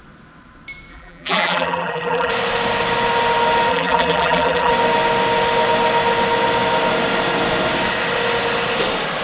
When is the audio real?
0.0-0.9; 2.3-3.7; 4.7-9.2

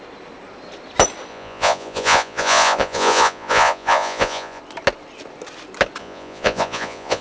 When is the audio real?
0.0-1.3; 4.6-6.0